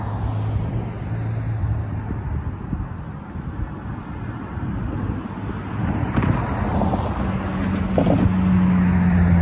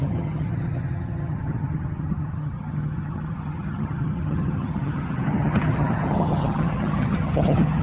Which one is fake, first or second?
second